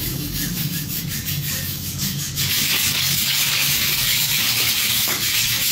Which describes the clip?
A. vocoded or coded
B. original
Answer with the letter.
A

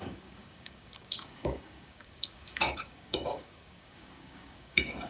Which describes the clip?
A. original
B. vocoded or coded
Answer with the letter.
B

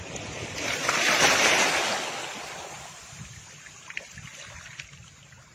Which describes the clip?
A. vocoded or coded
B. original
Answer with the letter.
B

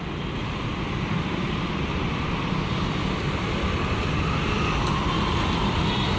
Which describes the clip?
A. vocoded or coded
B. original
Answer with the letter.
B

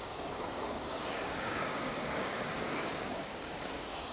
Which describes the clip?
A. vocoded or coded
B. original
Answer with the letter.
A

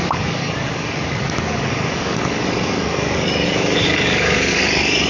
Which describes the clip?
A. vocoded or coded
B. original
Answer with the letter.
A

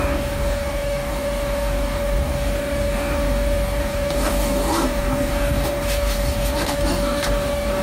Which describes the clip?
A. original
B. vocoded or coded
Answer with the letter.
B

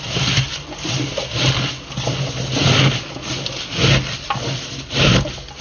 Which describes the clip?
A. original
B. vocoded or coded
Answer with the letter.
A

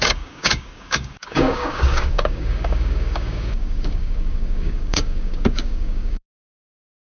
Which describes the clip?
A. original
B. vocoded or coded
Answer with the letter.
B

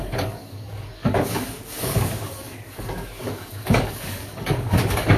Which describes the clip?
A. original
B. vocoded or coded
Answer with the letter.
B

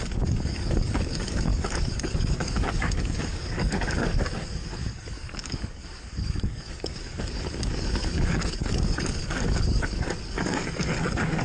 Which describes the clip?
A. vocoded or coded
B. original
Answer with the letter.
A